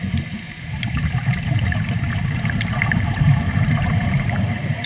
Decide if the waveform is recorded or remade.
remade